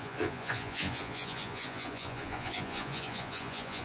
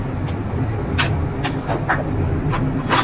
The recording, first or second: second